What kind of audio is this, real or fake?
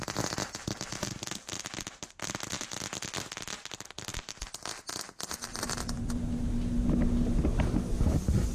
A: real